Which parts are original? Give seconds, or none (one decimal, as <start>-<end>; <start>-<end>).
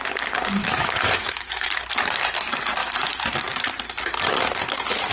0.0-0.6; 1.7-5.1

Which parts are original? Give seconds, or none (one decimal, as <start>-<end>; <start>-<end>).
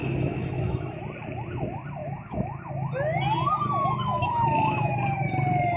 1.0-2.0; 2.7-4.1; 4.9-5.8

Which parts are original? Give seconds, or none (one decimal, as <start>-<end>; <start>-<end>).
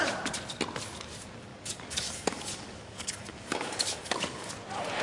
0.0-1.5; 4.5-5.0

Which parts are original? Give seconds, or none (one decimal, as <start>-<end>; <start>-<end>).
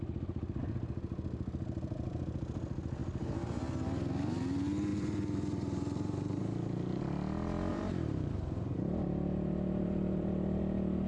0.0-3.0; 3.6-4.9; 7.0-7.7; 10.6-11.1